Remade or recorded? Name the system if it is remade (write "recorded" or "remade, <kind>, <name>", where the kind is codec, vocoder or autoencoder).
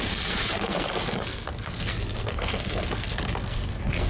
remade, codec, SNAC